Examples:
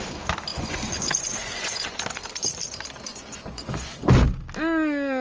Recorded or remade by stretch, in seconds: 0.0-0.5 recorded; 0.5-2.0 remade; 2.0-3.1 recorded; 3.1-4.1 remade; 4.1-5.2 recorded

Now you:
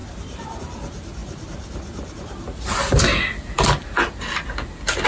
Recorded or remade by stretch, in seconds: 0.0-5.1 recorded

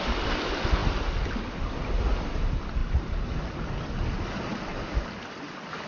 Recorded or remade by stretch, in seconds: 0.0-5.9 recorded

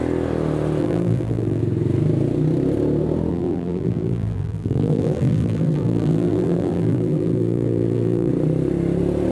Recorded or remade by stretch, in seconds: 0.0-0.8 recorded; 0.8-1.6 remade; 1.6-3.3 recorded; 3.3-8.3 remade; 8.3-9.3 recorded

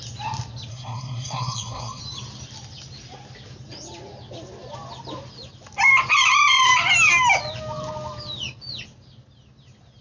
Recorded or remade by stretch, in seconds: 0.0-0.7 recorded; 0.7-2.0 remade; 2.0-10.0 recorded

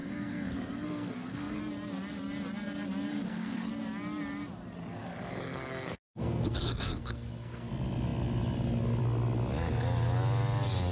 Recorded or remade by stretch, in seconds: 0.0-1.6 remade; 1.6-3.1 recorded; 3.1-3.7 remade; 3.7-5.0 recorded; 5.0-7.7 remade; 7.7-10.9 recorded